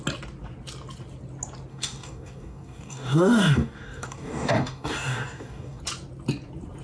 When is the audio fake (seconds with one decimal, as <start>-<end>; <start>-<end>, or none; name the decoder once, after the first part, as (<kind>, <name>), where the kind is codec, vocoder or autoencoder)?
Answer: 1.7-5.8 (codec, DAC)